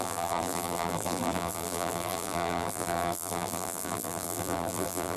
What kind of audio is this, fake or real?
fake